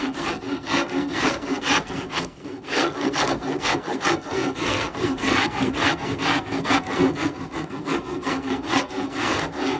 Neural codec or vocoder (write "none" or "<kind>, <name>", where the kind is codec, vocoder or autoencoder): codec, SNAC